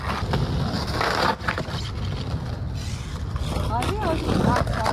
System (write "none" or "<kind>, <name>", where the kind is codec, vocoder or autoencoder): none